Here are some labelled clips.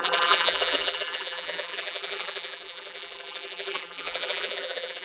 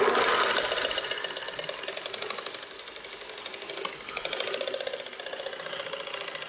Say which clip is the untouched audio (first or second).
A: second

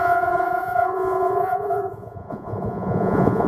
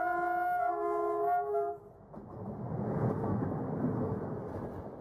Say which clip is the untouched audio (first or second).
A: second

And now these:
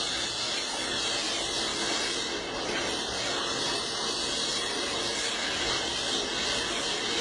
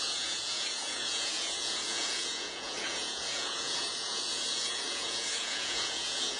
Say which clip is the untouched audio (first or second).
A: first